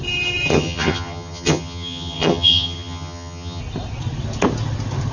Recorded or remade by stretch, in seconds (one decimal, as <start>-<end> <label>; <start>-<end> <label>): 0.0-0.5 recorded; 0.5-3.6 remade; 3.6-5.1 recorded